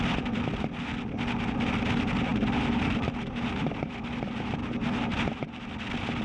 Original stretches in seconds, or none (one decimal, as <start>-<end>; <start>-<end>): 0.0-2.3; 3.9-4.6; 5.7-6.2